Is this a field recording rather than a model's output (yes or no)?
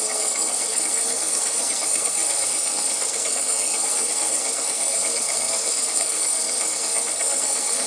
no